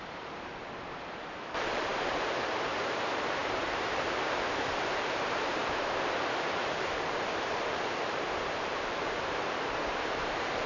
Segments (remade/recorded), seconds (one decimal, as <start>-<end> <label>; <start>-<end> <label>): 0.0-10.7 remade